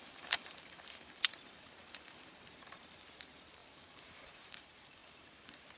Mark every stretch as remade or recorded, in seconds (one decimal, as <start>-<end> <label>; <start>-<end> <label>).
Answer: 0.0-5.8 remade